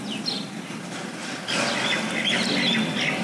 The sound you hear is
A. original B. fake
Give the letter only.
A